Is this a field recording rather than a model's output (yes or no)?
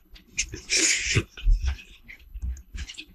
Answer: no